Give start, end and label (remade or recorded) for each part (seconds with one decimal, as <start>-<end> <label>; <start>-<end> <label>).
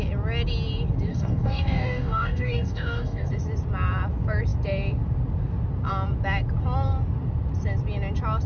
0.0-1.1 recorded; 1.1-3.3 remade; 3.3-8.5 recorded